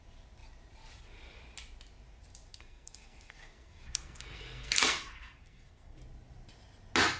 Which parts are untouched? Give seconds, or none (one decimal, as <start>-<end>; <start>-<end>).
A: 0.0-2.5; 6.0-7.2